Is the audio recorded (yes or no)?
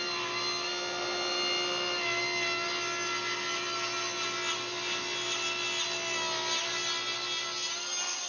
yes